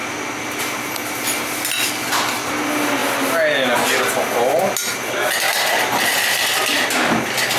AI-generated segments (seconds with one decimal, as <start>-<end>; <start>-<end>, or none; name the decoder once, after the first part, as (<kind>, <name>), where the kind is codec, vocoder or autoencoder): none